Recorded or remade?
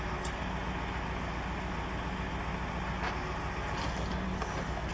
recorded